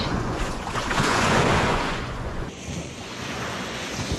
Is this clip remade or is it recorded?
remade